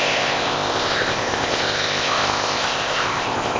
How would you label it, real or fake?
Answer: fake